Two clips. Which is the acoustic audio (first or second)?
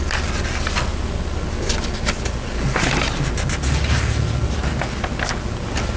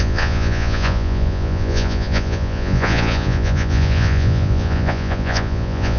first